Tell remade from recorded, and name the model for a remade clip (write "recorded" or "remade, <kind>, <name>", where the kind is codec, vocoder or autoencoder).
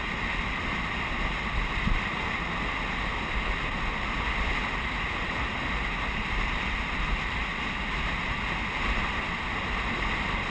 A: recorded